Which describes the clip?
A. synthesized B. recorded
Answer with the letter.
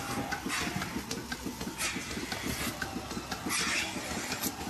B